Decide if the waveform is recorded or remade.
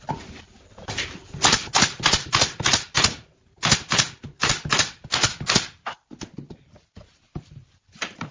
recorded